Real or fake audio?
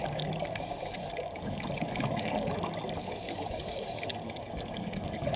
fake